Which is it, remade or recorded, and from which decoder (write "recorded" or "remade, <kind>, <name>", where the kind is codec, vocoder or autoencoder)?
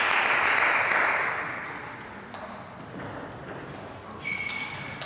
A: recorded